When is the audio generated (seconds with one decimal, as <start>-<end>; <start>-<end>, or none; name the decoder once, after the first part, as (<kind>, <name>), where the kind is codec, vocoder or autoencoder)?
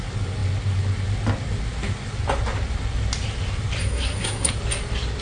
3.8-4.5 (codec, SNAC)